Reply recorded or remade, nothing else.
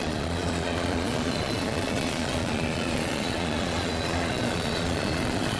remade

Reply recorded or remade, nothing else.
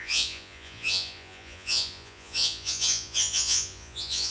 remade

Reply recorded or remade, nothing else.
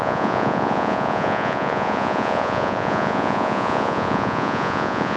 remade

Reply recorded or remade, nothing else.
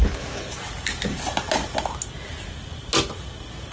recorded